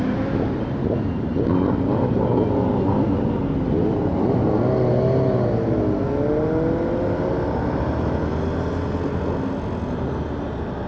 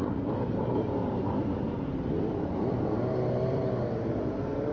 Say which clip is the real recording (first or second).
first